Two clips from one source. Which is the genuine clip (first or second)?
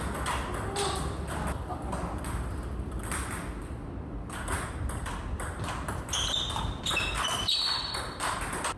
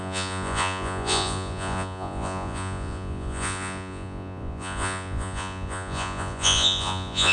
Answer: first